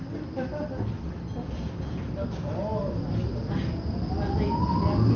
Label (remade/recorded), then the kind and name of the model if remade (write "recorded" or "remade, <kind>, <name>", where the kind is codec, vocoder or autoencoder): recorded